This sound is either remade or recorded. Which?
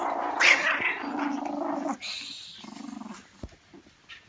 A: recorded